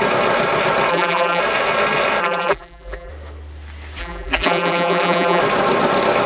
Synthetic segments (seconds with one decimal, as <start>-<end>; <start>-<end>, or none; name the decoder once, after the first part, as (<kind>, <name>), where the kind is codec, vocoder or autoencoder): 0.9-1.4 (vocoder, BigVGAN v2); 2.2-3.1; 4.0-5.4